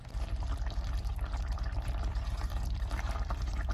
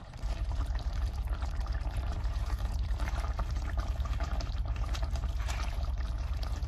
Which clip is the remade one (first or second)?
second